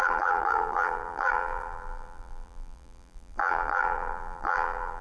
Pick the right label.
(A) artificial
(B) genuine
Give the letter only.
A